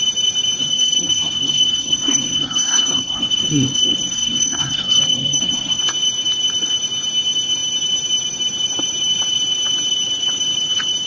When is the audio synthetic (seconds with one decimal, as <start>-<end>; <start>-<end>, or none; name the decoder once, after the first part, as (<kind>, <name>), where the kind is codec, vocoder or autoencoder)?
0.6-5.8 (codec, SNAC)